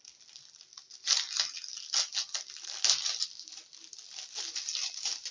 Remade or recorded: recorded